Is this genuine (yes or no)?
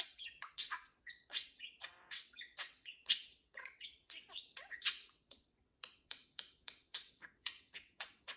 no